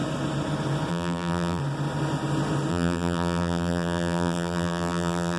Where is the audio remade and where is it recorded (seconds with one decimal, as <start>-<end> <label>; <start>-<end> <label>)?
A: 0.0-0.9 recorded; 0.9-1.6 remade; 1.6-2.7 recorded; 2.7-5.4 remade